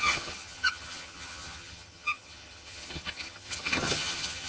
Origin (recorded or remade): remade